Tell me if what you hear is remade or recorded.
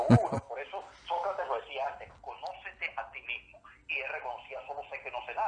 recorded